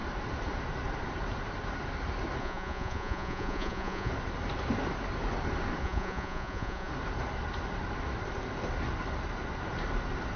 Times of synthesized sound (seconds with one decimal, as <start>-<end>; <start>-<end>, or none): 2.4-4.1; 5.8-6.9